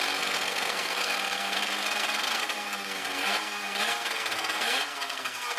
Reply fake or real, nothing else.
fake